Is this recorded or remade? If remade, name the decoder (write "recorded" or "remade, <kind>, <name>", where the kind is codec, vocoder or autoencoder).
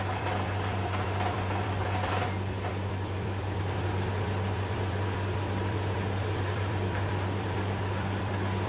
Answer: remade, vocoder, BigVGAN v2